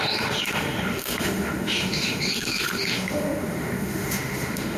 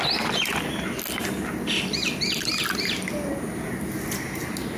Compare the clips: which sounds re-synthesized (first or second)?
first